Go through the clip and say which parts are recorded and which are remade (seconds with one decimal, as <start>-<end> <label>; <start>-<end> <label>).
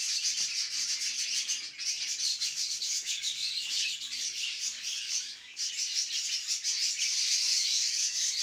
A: 0.0-2.3 recorded; 2.3-5.7 remade; 5.7-7.5 recorded; 7.5-8.4 remade